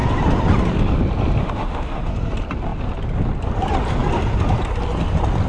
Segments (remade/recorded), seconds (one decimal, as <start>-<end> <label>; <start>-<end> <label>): 0.0-1.4 recorded; 1.4-2.1 remade; 2.1-5.5 recorded